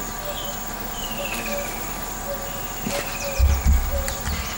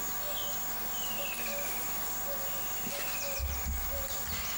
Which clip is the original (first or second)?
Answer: second